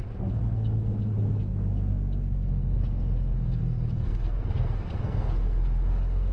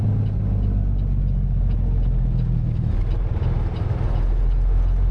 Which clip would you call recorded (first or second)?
second